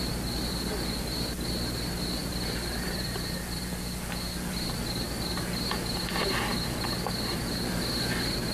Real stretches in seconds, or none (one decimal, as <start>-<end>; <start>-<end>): 0.0-8.5